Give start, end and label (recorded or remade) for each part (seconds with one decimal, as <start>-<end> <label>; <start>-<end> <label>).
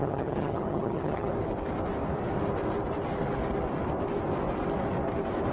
0.0-1.3 remade; 1.3-5.5 recorded